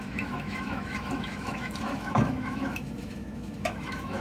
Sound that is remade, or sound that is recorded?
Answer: remade